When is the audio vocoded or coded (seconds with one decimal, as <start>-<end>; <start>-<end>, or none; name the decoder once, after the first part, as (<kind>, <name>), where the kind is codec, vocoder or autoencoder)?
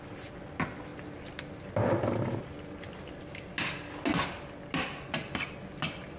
none